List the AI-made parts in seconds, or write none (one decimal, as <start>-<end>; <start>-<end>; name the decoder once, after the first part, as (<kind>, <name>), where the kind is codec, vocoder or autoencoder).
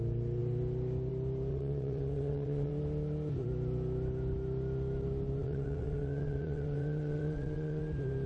1.5-2.7 (vocoder, WaveNeXt); 5.4-7.8